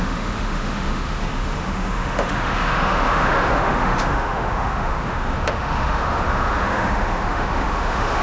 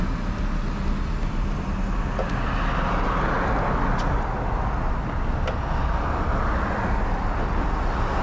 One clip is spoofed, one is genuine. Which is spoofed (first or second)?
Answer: first